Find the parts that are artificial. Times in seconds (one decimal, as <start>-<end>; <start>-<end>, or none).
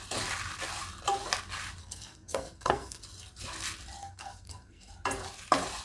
1.8-3.0; 4.0-4.9